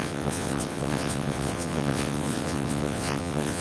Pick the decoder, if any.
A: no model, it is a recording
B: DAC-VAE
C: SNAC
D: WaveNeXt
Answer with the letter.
D